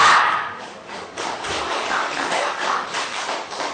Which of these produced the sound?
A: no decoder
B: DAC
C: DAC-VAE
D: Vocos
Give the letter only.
B